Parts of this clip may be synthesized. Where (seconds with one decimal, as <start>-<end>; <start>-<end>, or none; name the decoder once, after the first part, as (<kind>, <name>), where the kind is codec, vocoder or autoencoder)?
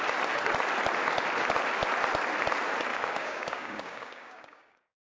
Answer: 2.9-5.1 (codec, DAC)